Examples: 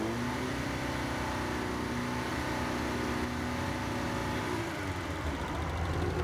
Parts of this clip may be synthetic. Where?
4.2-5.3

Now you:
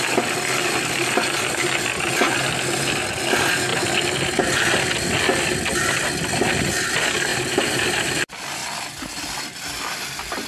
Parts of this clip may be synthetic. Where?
7.3-8.1

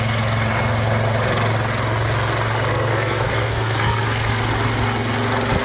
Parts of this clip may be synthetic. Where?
2.7-4.5

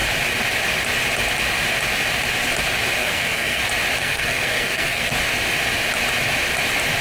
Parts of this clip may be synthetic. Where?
3.0-3.6; 4.0-5.1